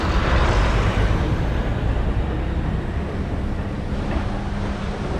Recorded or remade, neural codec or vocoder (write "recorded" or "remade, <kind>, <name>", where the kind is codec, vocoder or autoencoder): remade, vocoder, BigVGAN v2